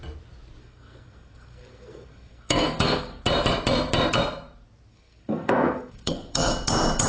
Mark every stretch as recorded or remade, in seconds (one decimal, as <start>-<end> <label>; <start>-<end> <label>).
0.0-0.6 recorded; 0.6-3.2 remade; 3.2-4.9 recorded; 4.9-6.5 remade; 6.5-7.1 recorded